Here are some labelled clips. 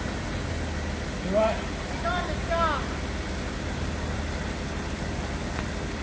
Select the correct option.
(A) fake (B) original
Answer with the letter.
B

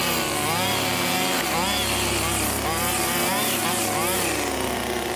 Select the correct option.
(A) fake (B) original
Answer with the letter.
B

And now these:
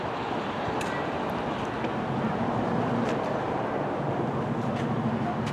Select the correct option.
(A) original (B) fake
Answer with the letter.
B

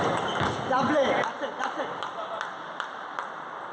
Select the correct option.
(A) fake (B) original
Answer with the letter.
A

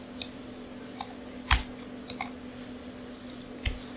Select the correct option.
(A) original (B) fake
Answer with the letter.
A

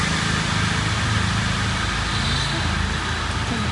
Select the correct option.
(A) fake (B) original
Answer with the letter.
B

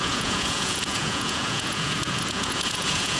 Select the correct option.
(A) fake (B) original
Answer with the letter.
A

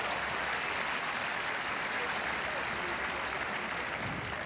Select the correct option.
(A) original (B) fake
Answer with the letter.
A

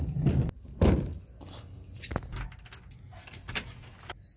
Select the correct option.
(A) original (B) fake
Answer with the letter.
A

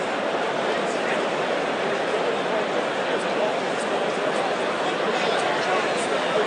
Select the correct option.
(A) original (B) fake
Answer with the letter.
A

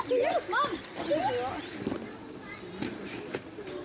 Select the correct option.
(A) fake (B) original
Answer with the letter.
B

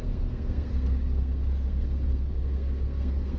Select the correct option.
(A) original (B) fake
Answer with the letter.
B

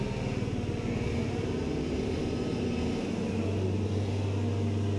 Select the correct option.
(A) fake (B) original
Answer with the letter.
B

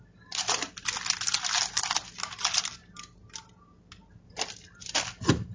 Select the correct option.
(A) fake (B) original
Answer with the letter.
B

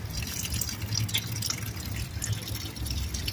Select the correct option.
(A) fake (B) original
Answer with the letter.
B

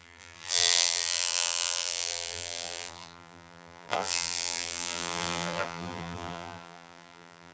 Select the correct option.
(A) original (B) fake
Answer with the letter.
B